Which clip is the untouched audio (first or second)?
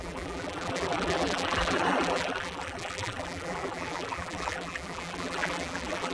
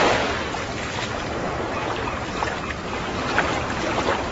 second